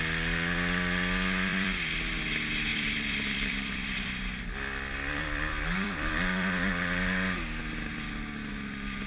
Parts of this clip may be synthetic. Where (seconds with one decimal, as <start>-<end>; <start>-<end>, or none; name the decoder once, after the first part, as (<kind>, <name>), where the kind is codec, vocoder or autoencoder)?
1.5-2.2 (vocoder, BigVGAN v2); 2.7-4.4; 5.2-6.1